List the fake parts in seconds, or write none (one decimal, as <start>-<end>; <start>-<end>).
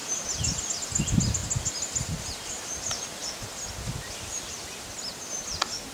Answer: 1.4-2.5